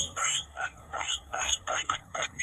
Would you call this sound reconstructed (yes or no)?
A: yes